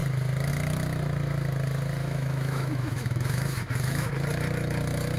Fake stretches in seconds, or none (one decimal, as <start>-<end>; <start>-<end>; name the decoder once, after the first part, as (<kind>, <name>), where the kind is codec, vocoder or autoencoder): 2.0-4.1 (autoencoder, DAC-VAE)